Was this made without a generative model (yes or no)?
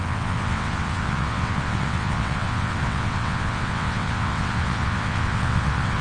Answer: no